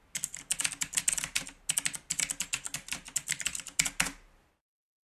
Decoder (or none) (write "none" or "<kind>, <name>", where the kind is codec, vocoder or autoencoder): none